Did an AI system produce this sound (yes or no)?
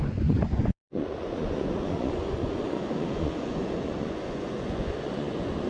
yes